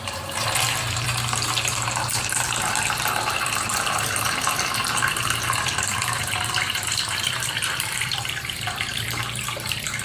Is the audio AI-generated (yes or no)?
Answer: yes